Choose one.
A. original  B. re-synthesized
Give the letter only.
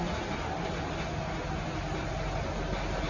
A